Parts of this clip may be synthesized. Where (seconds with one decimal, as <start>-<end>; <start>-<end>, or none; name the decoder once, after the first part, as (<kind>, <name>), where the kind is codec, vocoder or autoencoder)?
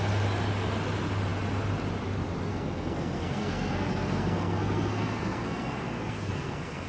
2.5-6.9 (codec, SNAC)